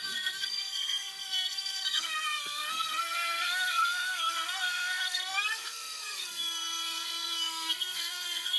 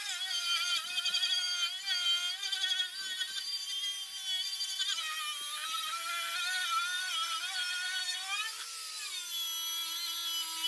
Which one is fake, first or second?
first